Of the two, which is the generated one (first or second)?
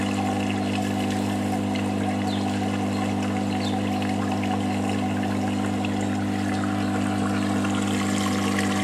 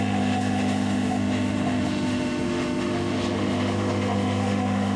second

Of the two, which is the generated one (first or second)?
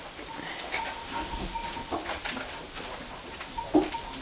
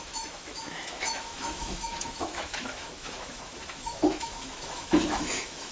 second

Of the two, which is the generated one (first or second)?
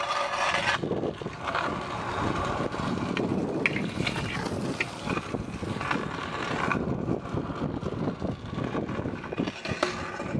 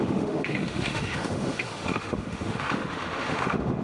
second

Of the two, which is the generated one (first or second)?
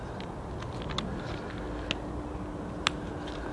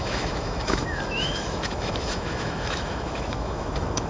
second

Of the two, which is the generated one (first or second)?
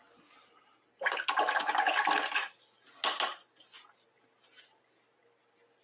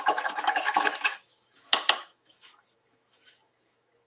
second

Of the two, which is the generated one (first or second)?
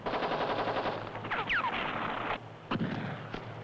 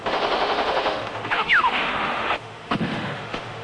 second